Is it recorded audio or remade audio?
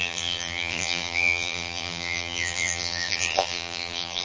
remade